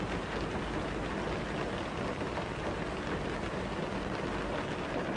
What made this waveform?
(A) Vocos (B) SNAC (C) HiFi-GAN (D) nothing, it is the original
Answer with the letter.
D